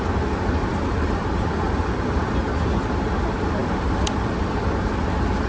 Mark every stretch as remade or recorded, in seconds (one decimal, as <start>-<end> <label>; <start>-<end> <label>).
0.0-0.7 recorded; 0.7-2.2 remade; 2.2-3.6 recorded; 3.6-4.4 remade; 4.4-5.5 recorded